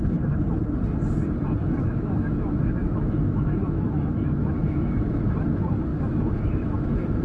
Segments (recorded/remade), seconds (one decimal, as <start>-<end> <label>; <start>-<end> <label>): 0.0-1.6 recorded; 1.6-5.1 remade; 5.1-5.9 recorded; 5.9-7.2 remade